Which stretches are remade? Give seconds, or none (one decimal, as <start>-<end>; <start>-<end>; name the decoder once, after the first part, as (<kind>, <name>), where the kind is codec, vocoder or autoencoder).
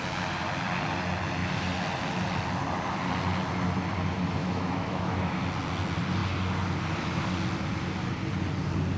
4.4-5.4 (autoencoder, DAC-VAE)